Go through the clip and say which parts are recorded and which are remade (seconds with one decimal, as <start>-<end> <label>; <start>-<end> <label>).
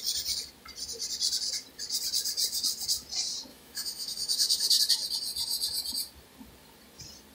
0.0-3.5 recorded; 3.5-4.8 remade; 4.8-7.3 recorded